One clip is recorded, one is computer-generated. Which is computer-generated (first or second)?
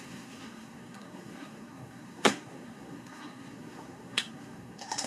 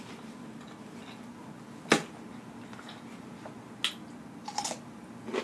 first